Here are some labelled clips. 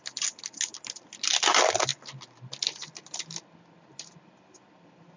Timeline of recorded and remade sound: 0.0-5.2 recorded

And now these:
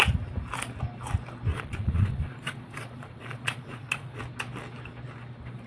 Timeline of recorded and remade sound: 0.0-1.5 recorded; 1.5-4.2 remade; 4.2-5.7 recorded